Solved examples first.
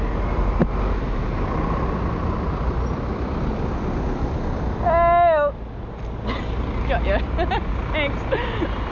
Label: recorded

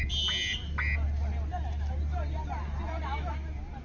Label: recorded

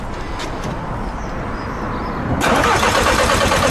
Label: recorded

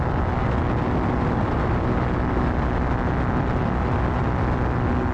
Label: recorded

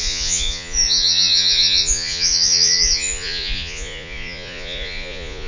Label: remade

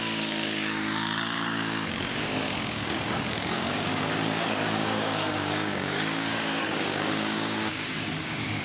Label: remade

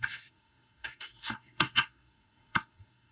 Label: remade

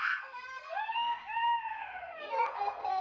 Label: remade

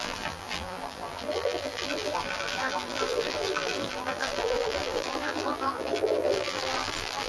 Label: remade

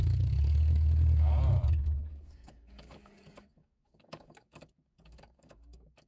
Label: remade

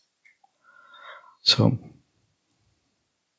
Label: remade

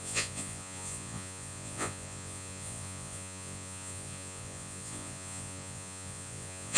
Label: remade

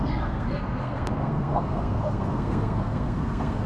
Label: remade